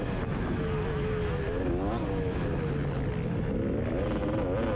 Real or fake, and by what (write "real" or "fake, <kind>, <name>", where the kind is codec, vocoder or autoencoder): real